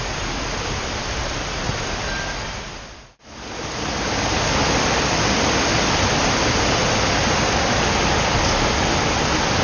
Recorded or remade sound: recorded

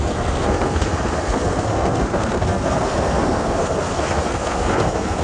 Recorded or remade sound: remade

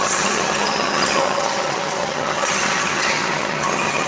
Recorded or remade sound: remade